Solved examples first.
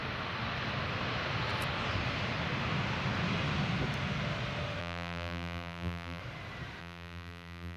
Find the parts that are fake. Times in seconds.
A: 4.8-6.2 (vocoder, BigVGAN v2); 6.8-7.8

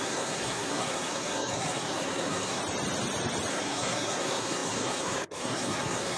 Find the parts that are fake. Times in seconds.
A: 0.0-2.6 (codec, SNAC); 3.5-6.2

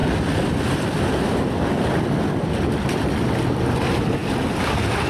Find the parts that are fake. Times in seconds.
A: none

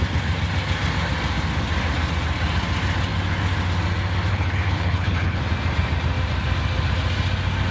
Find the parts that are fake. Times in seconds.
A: 4.3-5.4 (codec, HILCodec)